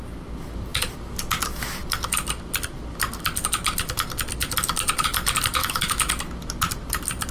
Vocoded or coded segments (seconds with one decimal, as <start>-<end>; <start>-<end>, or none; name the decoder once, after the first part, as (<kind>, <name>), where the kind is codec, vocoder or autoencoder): 5.6-6.1 (autoencoder, DAC-VAE)